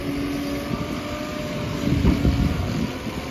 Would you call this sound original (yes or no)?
yes